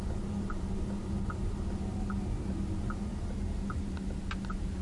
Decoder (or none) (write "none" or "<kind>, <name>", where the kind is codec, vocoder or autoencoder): none